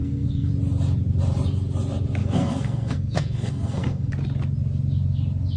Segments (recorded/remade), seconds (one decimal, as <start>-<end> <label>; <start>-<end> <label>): 0.0-0.5 remade; 0.5-2.2 recorded; 2.2-4.1 remade; 4.1-5.6 recorded

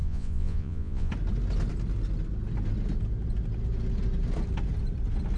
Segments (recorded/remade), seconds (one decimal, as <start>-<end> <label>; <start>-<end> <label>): 0.0-1.1 remade; 1.1-5.4 recorded

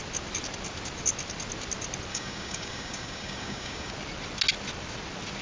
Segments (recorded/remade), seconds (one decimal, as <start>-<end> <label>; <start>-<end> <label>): 0.0-2.1 recorded; 2.1-3.9 remade; 3.9-5.4 recorded

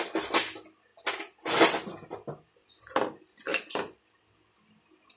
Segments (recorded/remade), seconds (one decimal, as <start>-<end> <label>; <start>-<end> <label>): 0.0-3.5 recorded; 3.5-4.2 remade; 4.2-5.2 recorded

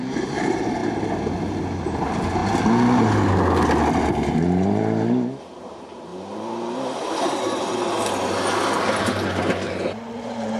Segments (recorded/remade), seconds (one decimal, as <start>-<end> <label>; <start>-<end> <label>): 0.0-0.8 remade; 0.8-2.0 recorded; 2.0-2.4 remade; 2.4-3.9 recorded; 3.9-6.1 remade; 6.1-9.0 recorded; 9.0-10.6 remade

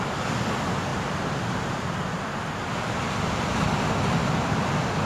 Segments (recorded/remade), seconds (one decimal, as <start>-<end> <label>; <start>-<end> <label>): 0.0-0.9 recorded; 0.9-2.7 remade; 2.7-5.1 recorded

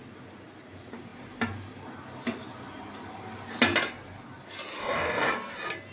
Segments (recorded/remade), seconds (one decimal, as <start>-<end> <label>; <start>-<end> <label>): 0.0-4.8 recorded; 4.8-5.3 remade; 5.3-5.9 recorded

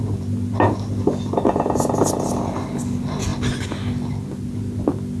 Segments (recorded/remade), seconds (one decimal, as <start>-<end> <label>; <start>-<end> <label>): 0.0-5.2 recorded